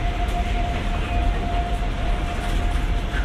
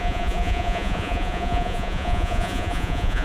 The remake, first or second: second